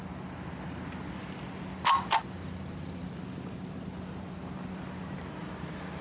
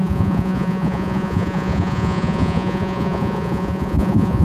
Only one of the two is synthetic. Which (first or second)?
second